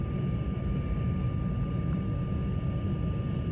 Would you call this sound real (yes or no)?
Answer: yes